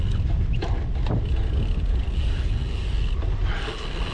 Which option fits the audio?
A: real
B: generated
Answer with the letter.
A